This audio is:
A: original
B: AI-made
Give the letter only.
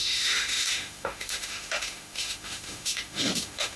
B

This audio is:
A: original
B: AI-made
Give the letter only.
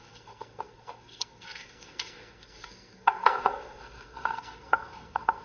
B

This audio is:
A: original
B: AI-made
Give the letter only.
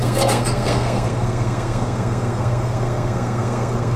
B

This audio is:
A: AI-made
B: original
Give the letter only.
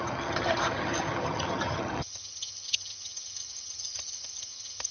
A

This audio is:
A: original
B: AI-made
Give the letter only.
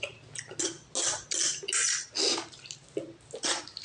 A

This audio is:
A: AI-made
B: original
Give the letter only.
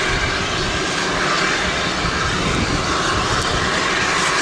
B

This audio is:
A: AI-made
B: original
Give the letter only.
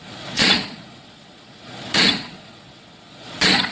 A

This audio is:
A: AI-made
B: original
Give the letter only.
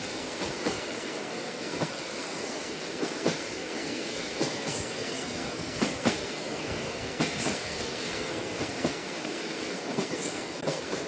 A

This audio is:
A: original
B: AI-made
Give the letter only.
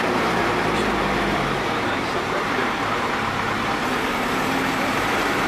B